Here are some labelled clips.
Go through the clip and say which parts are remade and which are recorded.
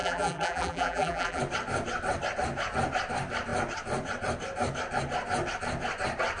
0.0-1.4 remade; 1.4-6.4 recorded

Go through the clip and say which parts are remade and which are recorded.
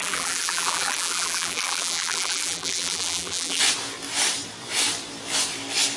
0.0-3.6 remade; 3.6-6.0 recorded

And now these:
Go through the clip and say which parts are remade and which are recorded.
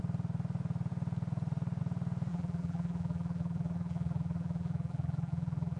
0.0-2.3 recorded; 2.3-5.8 remade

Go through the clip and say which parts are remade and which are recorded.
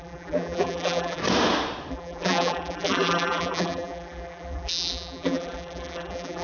0.0-1.2 remade; 1.2-1.9 recorded; 1.9-6.4 remade